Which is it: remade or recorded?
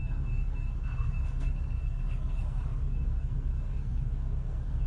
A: remade